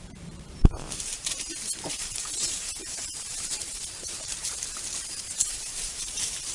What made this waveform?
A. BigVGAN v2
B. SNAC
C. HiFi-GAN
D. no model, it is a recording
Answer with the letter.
A